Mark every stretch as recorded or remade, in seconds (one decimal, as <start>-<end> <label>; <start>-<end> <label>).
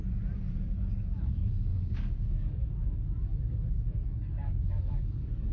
0.0-0.6 recorded; 0.6-5.5 remade